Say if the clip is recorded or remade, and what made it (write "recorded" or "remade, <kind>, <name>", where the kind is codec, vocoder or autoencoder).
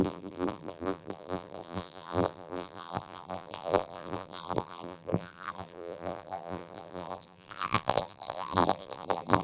remade, vocoder, BigVGAN v2